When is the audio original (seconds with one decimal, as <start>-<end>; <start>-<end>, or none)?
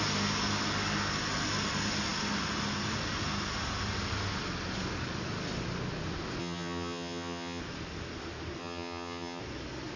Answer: 0.0-6.4; 7.6-8.6; 9.4-10.0